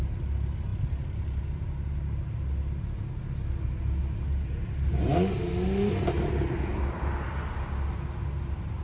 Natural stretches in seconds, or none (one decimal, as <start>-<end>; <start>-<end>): 0.0-8.8